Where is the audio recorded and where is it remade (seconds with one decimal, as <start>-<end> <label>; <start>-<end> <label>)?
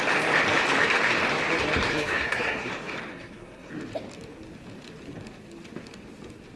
0.0-1.9 recorded; 1.9-2.7 remade; 2.7-3.1 recorded; 3.1-3.7 remade; 3.7-6.6 recorded